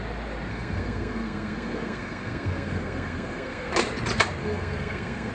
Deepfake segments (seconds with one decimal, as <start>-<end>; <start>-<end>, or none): 0.5-3.7; 4.4-5.3